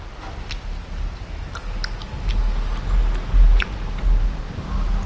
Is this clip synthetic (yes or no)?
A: no